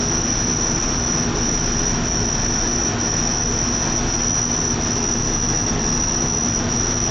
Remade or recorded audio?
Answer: recorded